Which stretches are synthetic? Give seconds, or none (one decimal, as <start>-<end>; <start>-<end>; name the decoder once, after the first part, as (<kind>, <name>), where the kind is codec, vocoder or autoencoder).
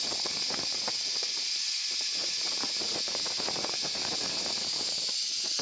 0.0-5.6 (vocoder, Vocos)